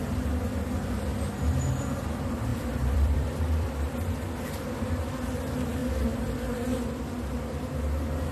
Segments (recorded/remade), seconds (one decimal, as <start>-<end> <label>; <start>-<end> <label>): 0.0-2.5 recorded; 2.5-3.7 remade; 3.7-8.3 recorded